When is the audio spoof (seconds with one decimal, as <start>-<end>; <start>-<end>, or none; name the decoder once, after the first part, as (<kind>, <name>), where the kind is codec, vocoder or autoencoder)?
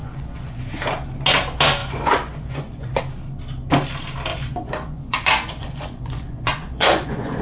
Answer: 0.0-0.6 (vocoder, Vocos); 1.8-3.0; 4.3-7.4